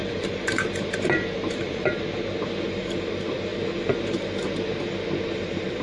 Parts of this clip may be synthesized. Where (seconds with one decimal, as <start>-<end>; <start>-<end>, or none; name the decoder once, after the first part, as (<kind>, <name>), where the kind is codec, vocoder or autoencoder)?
0.0-3.5 (vocoder, BigVGAN v2); 4.8-5.8